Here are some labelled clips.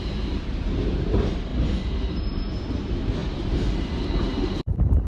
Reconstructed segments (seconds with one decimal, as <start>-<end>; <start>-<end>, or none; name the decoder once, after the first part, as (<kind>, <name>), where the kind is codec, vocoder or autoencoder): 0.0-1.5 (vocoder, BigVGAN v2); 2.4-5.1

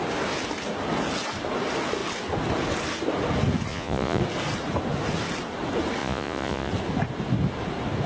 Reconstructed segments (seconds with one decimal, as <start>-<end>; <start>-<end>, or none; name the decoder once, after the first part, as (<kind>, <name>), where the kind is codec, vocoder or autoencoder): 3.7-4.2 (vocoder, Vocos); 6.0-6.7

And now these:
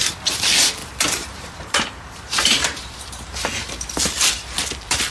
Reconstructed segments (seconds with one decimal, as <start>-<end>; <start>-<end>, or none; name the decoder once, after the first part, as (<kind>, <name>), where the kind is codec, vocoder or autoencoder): 0.8-3.9 (vocoder, BigVGAN v2)

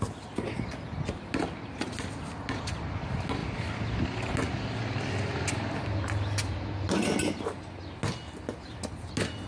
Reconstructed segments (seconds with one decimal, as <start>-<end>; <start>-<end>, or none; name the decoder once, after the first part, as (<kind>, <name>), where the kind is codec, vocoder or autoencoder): none

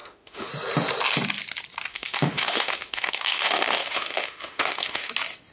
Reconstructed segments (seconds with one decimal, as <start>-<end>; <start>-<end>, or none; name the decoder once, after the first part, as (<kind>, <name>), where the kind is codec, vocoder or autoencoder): 0.0-0.5 (autoencoder, DAC-VAE); 1.9-5.1